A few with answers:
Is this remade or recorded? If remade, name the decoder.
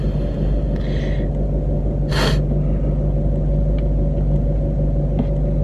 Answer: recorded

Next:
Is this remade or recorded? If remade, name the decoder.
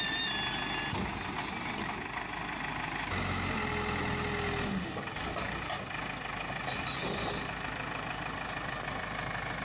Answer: recorded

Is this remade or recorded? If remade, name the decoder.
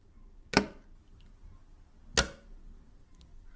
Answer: recorded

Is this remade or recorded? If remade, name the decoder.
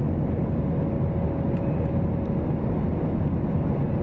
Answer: recorded